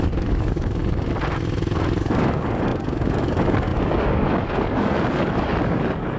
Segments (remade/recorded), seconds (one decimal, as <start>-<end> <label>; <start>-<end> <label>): 0.0-0.8 remade; 0.8-2.0 recorded; 2.0-6.2 remade